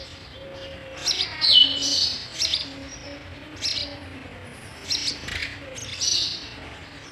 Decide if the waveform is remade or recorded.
recorded